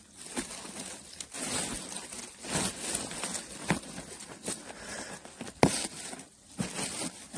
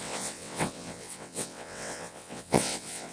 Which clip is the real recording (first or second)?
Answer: first